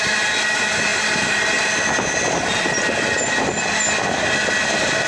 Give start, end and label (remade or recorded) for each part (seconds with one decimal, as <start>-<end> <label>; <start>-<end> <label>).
0.0-5.1 recorded